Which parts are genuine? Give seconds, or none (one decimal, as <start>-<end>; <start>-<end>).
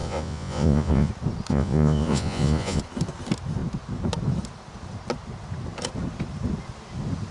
1.1-1.5; 2.8-7.3